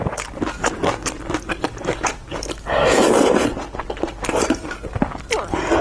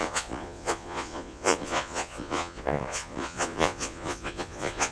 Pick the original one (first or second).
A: first